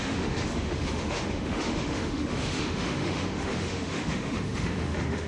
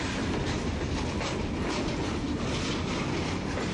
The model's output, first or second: first